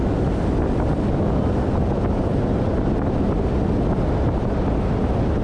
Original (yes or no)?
yes